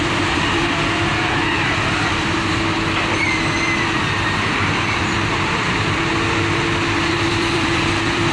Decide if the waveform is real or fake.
fake